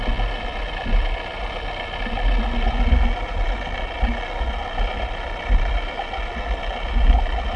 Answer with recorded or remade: recorded